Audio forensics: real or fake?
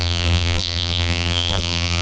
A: fake